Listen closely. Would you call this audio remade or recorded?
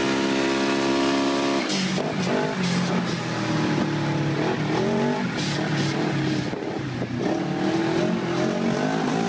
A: recorded